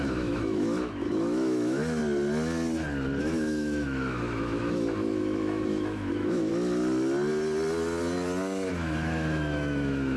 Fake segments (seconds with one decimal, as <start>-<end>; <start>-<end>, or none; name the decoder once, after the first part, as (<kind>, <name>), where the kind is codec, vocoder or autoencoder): 0.0-2.0 (autoencoder, DAC-VAE); 3.2-6.5; 8.7-10.2